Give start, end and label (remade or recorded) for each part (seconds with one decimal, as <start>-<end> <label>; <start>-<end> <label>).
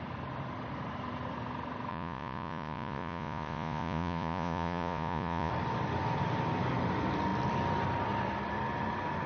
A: 0.0-1.9 recorded; 1.9-5.5 remade; 5.5-9.3 recorded